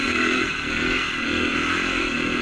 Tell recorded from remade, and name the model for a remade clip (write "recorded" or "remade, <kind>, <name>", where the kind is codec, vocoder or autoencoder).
remade, codec, SNAC